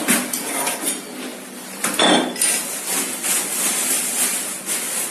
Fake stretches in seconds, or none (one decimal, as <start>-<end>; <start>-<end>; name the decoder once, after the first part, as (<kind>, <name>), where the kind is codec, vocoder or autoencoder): none